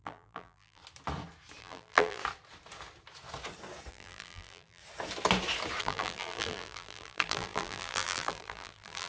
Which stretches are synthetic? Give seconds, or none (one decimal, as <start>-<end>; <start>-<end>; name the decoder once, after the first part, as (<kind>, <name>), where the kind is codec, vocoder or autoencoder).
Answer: 0.0-0.8 (vocoder, BigVGAN v2); 1.6-2.2; 3.9-4.8; 5.8-9.1